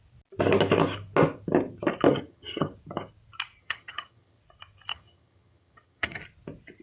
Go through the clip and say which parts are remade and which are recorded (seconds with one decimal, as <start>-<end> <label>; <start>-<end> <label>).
0.0-2.1 recorded; 2.1-2.7 remade; 2.7-3.6 recorded; 3.6-4.4 remade; 4.4-4.9 recorded; 4.9-6.2 remade; 6.2-6.8 recorded